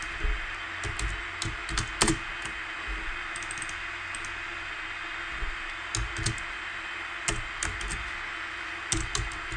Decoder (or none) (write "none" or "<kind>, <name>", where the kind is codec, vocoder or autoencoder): none